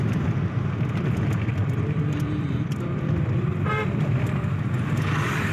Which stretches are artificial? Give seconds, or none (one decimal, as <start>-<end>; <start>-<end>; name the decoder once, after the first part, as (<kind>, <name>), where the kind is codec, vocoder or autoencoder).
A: 1.6-4.9 (vocoder, BigVGAN v2)